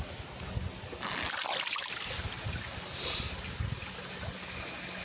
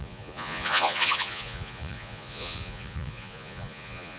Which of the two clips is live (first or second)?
first